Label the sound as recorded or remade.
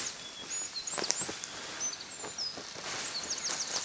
recorded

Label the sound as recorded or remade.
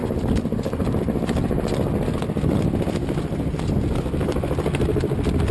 recorded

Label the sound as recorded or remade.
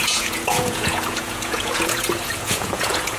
remade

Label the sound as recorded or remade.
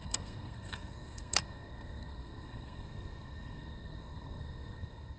remade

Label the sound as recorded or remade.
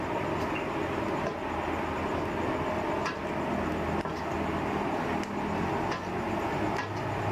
recorded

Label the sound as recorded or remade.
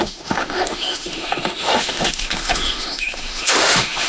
remade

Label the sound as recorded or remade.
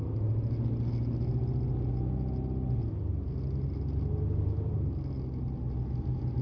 recorded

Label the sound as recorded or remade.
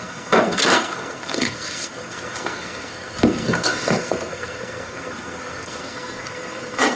remade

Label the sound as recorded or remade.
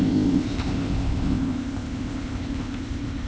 remade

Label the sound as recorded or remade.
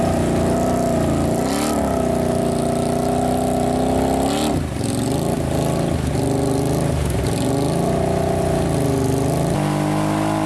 recorded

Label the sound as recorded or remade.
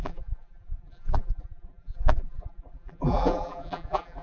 remade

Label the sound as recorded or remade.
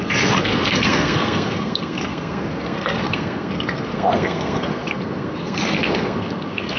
remade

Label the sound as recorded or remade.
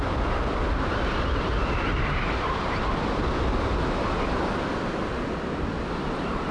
recorded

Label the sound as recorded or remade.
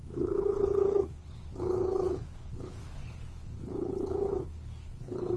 remade